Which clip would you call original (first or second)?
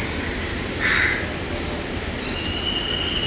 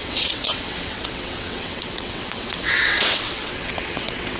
first